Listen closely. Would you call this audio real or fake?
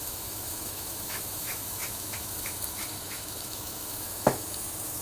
fake